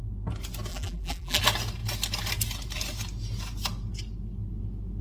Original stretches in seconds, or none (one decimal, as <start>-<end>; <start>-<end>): 0.0-0.7; 1.4-5.0